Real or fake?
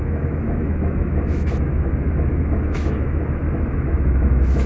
fake